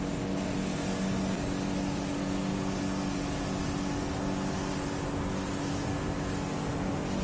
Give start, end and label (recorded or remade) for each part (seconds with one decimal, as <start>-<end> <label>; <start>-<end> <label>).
0.0-7.2 recorded